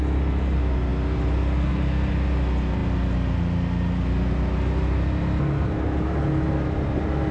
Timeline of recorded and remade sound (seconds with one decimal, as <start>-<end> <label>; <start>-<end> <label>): 0.0-7.3 recorded